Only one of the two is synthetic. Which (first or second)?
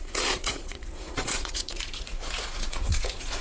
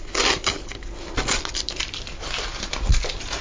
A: first